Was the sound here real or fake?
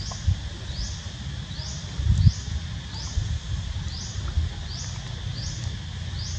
real